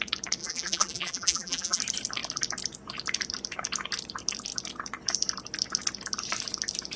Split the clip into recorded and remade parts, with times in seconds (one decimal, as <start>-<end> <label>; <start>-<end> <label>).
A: 0.0-0.4 recorded; 0.4-1.8 remade; 1.8-7.0 recorded